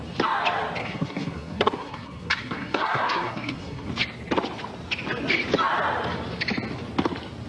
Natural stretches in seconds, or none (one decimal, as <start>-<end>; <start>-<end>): 0.0-0.8; 3.9-7.5